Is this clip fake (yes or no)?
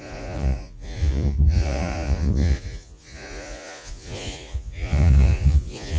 yes